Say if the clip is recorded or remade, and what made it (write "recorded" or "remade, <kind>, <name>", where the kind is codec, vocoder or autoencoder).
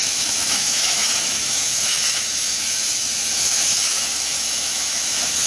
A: remade, autoencoder, DAC-VAE